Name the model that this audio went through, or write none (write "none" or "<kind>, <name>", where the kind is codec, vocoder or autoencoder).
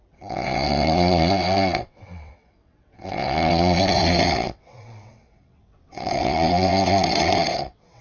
vocoder, WaveNeXt